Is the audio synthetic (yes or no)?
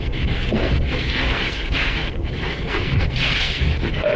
yes